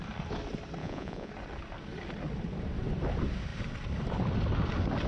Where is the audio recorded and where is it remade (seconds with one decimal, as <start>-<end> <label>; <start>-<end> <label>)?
0.0-0.8 recorded; 0.8-1.3 remade; 1.3-5.1 recorded